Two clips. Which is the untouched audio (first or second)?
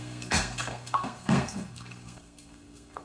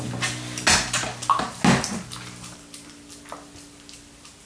second